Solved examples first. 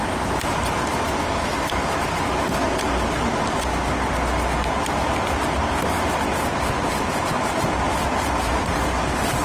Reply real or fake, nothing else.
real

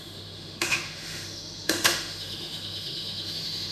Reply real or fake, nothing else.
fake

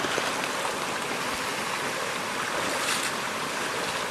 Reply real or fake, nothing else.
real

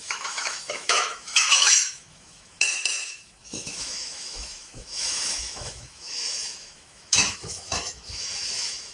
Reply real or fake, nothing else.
fake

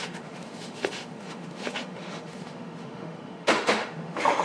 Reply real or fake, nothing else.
fake